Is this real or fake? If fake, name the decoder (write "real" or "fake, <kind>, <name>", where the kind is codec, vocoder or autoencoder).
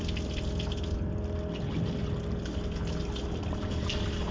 real